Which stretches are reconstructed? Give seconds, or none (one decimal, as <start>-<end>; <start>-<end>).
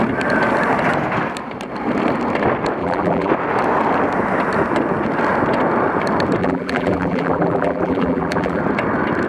2.8-3.3; 6.4-8.6